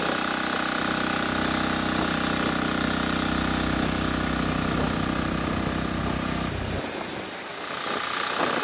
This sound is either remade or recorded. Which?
recorded